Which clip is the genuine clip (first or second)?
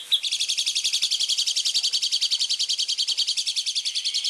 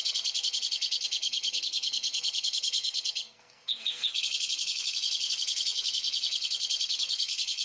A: first